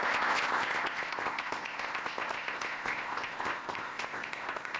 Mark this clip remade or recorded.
remade